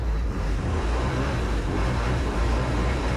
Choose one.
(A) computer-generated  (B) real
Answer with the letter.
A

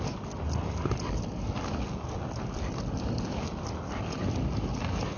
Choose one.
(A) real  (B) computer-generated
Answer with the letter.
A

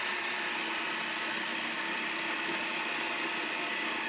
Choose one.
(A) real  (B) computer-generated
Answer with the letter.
A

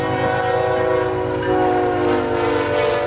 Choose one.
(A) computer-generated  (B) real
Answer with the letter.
B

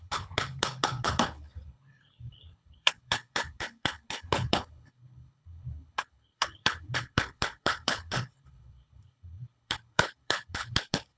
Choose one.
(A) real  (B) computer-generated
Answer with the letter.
B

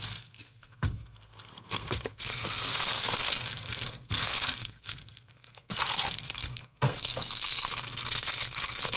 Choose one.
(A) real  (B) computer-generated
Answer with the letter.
B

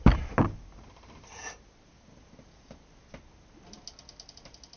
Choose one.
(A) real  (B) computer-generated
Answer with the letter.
A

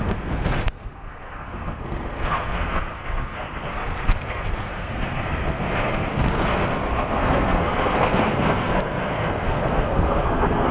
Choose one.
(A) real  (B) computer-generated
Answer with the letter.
B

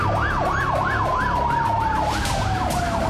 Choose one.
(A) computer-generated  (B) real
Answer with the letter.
B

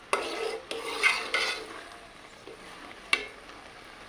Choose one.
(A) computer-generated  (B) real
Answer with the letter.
B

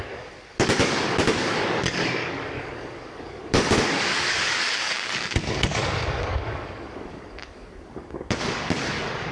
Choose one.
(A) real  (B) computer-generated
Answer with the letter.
B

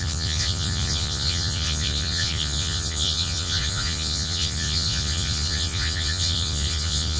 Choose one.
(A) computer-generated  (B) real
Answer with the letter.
A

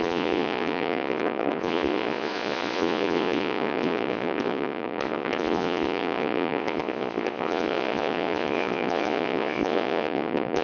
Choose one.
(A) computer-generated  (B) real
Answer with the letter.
A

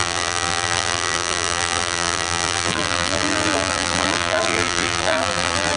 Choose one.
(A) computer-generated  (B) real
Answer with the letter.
A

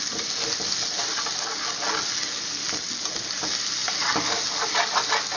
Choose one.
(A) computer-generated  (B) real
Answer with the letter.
B